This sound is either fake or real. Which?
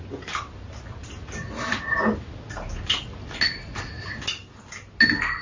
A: real